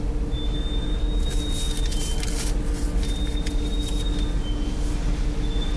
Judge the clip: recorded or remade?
recorded